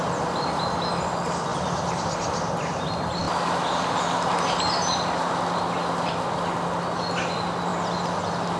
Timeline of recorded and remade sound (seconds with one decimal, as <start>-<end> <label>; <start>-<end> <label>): 0.0-1.5 recorded; 1.5-2.5 remade; 2.5-8.6 recorded